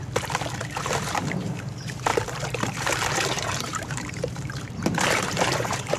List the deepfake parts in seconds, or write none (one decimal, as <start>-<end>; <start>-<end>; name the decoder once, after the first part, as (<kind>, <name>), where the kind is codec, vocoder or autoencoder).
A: 0.6-1.7 (vocoder, BigVGAN v2); 2.1-6.0